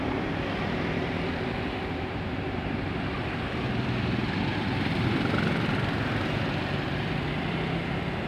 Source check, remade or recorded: remade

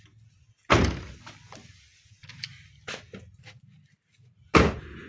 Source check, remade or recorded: recorded